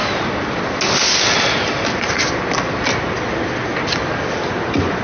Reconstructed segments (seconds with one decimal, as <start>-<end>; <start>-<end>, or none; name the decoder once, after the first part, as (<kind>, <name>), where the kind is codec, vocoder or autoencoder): none